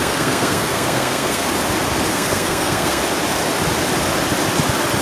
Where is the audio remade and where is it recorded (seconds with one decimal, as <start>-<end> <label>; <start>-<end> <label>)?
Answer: 0.0-1.5 remade; 1.5-2.1 recorded; 2.1-3.0 remade; 3.0-5.0 recorded